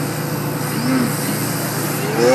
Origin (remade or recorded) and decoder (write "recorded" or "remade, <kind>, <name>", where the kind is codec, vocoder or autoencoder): recorded